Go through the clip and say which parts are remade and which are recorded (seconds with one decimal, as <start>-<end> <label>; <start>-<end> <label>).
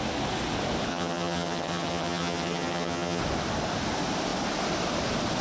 0.0-0.9 recorded; 0.9-3.2 remade; 3.2-5.4 recorded